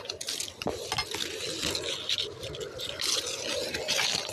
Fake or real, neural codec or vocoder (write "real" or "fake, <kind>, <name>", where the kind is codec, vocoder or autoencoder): real